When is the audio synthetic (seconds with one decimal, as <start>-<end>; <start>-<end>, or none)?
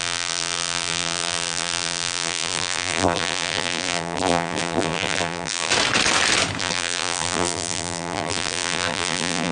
0.0-5.7; 6.6-9.5